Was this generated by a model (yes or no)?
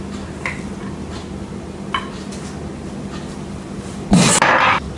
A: no